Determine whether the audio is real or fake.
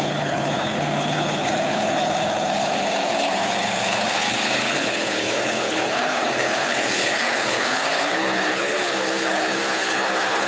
fake